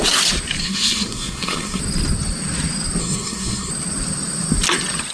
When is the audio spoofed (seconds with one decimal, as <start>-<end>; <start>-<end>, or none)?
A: 0.6-1.8; 3.0-3.7